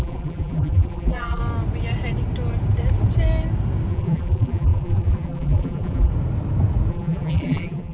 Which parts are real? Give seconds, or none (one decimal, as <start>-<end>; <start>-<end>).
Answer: 1.4-3.9; 6.1-6.9